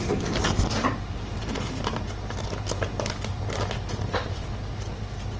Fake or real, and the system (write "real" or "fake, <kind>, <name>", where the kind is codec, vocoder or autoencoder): real